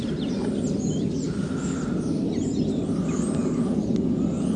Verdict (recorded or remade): recorded